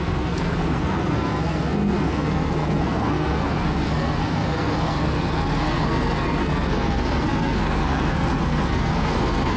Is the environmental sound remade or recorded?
remade